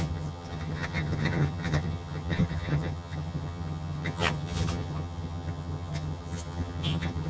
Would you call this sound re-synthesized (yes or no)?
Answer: yes